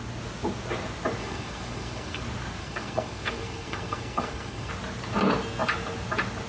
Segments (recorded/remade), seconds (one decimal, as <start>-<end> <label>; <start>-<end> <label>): 0.0-1.2 recorded; 1.2-2.2 remade; 2.2-2.6 recorded; 2.6-4.7 remade; 4.7-6.5 recorded